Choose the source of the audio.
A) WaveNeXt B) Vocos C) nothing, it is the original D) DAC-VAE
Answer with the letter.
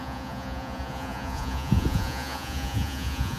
B